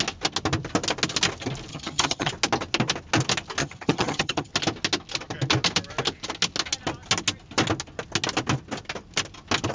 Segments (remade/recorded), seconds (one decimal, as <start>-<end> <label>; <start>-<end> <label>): 0.0-1.7 recorded; 1.7-2.3 remade; 2.3-3.6 recorded; 3.6-4.5 remade; 4.5-9.7 recorded